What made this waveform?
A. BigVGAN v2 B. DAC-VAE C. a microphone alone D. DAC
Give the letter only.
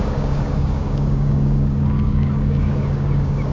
D